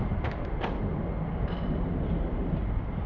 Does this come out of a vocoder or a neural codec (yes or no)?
no